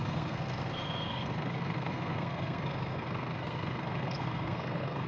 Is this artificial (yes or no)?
yes